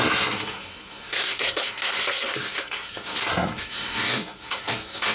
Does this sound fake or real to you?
fake